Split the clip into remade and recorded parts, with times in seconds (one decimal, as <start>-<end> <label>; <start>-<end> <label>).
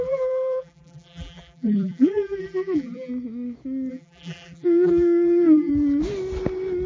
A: 0.0-3.1 remade; 3.1-3.9 recorded; 3.9-5.7 remade; 5.7-6.9 recorded